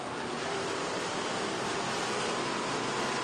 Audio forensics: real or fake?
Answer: fake